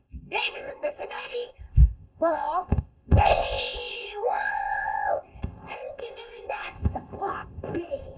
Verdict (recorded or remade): remade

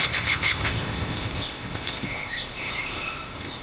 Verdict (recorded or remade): remade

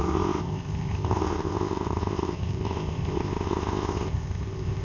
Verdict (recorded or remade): remade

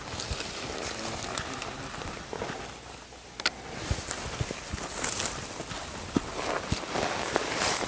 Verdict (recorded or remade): recorded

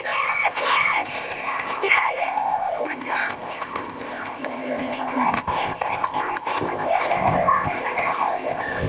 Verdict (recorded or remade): remade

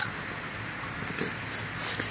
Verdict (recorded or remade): recorded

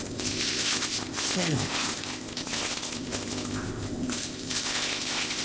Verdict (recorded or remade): remade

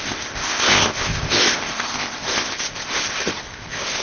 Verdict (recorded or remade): remade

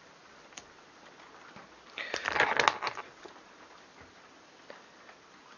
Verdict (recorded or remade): recorded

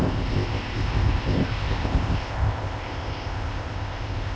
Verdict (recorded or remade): remade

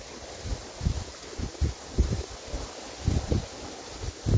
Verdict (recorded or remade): recorded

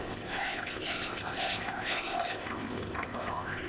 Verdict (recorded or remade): remade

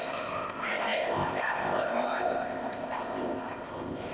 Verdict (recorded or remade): remade